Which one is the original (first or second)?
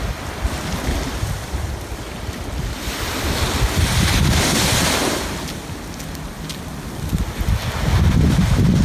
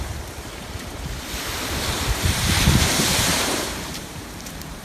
first